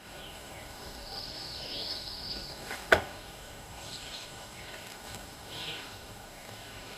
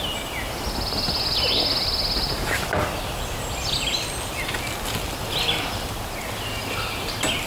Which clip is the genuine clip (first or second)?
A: second